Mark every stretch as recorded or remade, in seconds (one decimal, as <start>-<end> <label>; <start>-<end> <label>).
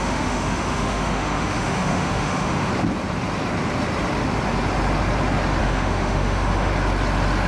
0.0-2.7 remade; 2.7-5.6 recorded; 5.6-6.7 remade; 6.7-7.5 recorded